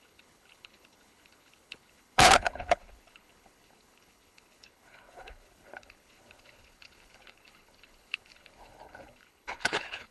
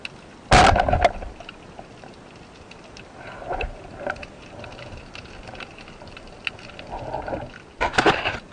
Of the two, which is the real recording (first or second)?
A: second